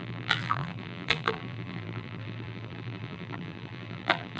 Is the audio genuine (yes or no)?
no